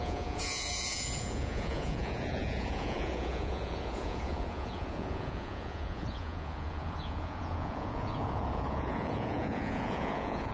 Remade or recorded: remade